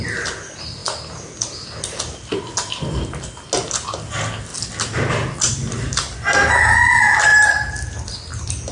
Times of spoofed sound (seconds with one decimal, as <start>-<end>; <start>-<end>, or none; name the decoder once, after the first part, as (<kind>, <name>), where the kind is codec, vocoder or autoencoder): none